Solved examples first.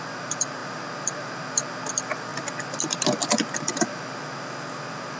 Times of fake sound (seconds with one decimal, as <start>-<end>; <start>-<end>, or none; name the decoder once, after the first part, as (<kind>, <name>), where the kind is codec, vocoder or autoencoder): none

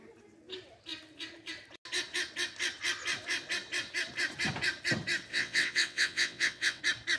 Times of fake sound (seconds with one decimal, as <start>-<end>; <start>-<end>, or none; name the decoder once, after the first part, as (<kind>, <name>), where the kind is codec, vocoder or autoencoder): 5.3-6.8 (vocoder, WaveNeXt)

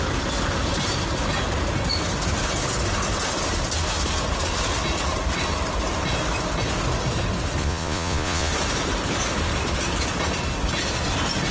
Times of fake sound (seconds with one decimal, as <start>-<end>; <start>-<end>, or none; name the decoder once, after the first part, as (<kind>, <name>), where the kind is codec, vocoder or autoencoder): 7.6-8.5 (vocoder, Vocos)

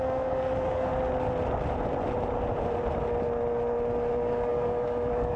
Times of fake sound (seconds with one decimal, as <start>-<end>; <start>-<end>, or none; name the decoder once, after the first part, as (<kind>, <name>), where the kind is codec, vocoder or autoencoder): 0.0-0.9 (codec, DAC); 4.1-5.4